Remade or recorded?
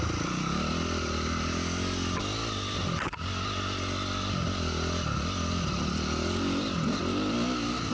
recorded